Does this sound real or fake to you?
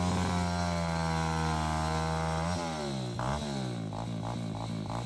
real